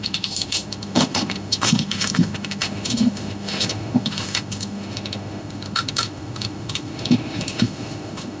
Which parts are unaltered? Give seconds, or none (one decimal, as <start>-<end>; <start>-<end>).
none